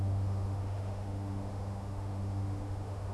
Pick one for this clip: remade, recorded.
remade